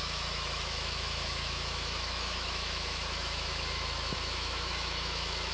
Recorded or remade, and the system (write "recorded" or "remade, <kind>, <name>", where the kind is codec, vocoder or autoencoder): remade, autoencoder, DAC-VAE